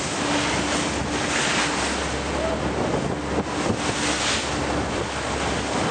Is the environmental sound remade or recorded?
recorded